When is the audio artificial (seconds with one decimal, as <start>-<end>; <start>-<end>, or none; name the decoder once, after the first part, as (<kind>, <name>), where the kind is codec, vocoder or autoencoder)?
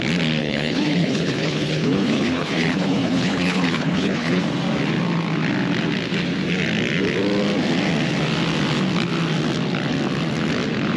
0.4-4.4 (codec, HILCodec)